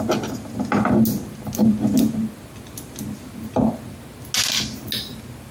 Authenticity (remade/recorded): recorded